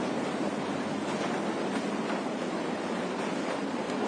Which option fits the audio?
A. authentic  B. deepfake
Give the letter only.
A